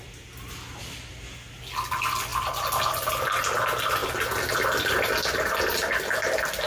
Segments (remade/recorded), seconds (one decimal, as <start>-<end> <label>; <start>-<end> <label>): 0.0-6.7 recorded